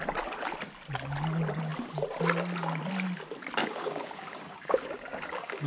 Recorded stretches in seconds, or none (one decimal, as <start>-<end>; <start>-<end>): 0.0-3.6